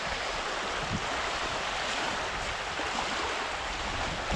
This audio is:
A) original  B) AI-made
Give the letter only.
A